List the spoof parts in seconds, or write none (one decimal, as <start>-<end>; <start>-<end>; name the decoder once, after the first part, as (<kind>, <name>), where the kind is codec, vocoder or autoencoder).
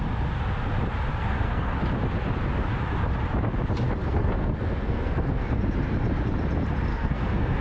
1.1-1.8 (codec, SNAC); 4.0-5.6; 6.9-7.6